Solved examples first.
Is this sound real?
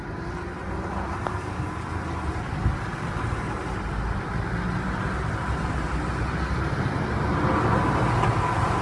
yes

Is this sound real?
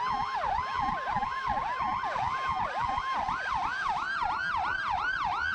yes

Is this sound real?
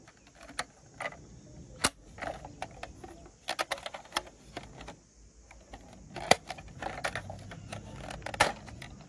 yes